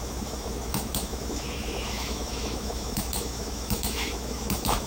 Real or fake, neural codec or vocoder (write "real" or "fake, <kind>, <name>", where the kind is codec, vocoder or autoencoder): fake, autoencoder, DAC-VAE